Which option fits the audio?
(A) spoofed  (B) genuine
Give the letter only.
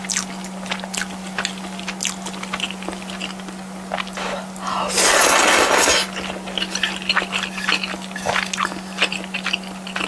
B